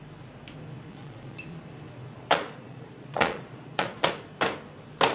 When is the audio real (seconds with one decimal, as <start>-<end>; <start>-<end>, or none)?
0.0-0.9; 1.6-2.1; 4.1-5.1

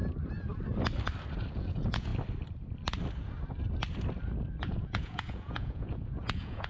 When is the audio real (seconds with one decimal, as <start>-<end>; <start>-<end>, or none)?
0.0-1.5; 2.1-4.6

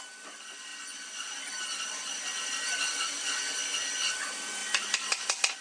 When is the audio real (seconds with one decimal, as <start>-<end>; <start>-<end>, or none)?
0.0-5.6

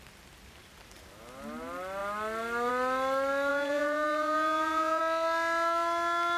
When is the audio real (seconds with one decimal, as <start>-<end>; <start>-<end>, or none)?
0.0-3.5; 5.0-6.4

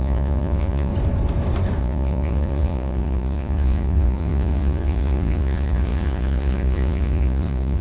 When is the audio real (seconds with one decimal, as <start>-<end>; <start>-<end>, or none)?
0.9-1.8

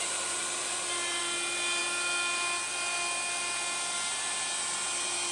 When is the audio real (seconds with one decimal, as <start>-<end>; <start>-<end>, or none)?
0.0-5.3

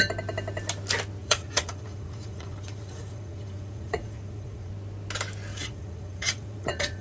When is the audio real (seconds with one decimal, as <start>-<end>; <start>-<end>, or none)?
0.0-1.2; 4.7-5.5